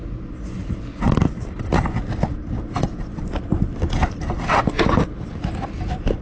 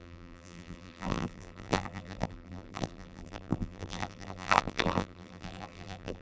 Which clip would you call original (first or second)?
first